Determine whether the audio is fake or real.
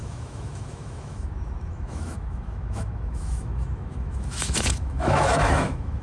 fake